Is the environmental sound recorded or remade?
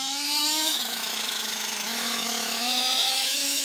remade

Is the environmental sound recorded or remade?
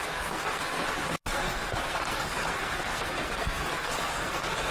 remade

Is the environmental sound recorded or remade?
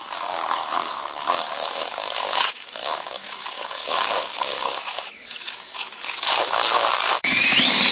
remade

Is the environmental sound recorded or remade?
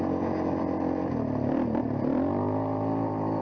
recorded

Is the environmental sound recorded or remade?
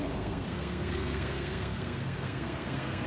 remade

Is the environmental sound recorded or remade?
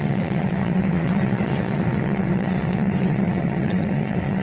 remade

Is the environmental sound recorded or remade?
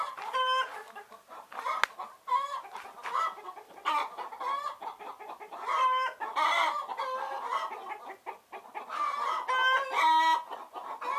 recorded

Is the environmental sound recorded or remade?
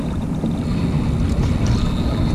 recorded